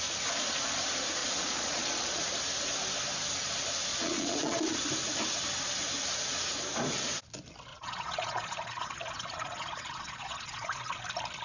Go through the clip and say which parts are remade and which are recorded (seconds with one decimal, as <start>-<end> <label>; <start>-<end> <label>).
0.0-1.2 recorded; 1.2-2.2 remade; 2.2-3.9 recorded; 3.9-4.8 remade; 4.8-7.7 recorded; 7.7-11.0 remade; 11.0-11.4 recorded